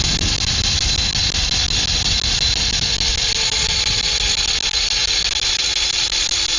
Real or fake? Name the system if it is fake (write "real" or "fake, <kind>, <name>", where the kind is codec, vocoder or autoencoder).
real